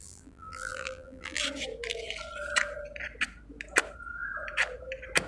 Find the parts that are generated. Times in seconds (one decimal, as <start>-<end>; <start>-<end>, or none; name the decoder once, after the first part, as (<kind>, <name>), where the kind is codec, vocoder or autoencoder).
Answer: 0.0-1.4 (vocoder, BigVGAN v2)